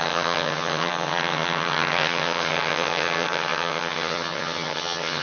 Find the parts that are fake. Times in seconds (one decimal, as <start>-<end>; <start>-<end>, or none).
0.0-5.2

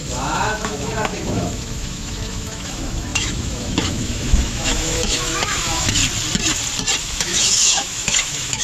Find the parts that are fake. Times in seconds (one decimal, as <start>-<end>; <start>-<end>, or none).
0.0-6.0; 7.0-8.6

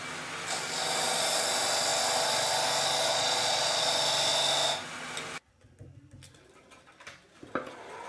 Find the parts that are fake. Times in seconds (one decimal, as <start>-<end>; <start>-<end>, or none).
3.1-3.9

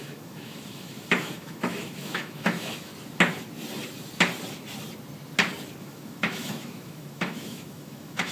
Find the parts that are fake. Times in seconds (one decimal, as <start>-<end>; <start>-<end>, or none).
0.0-2.9; 5.8-8.3

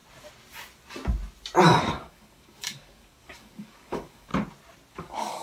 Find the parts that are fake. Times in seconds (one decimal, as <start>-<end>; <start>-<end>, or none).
1.8-4.3; 4.9-5.4

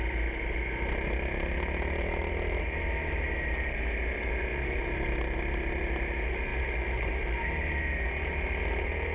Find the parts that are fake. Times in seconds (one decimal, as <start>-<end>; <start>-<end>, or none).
none

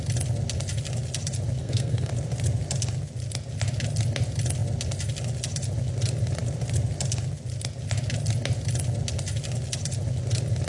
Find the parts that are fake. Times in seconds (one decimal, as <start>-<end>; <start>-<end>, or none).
1.6-2.1

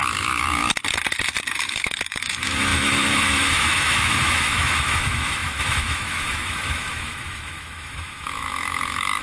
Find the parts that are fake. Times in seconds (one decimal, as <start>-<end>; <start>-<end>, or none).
0.0-0.6; 1.5-9.2